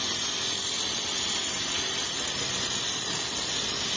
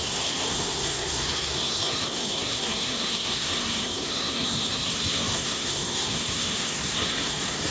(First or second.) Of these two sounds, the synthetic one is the second